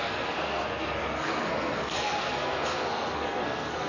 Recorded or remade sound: remade